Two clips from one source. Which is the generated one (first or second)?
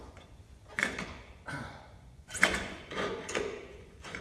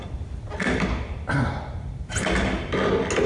first